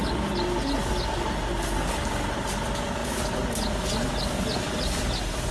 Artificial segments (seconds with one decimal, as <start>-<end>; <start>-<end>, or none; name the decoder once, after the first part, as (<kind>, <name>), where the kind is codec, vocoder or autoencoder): none